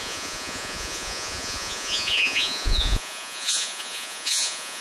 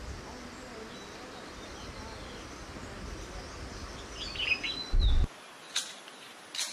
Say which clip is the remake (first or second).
first